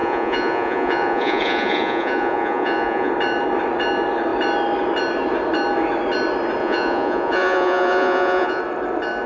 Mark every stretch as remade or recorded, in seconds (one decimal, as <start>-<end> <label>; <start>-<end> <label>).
0.0-3.1 remade; 3.1-6.6 recorded; 6.6-8.6 remade; 8.6-9.3 recorded